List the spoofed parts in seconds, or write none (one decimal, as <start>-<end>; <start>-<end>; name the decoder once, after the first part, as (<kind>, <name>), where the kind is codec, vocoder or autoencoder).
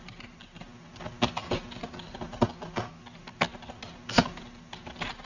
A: none